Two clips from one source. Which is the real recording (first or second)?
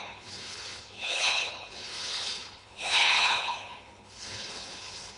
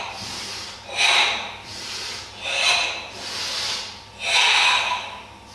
second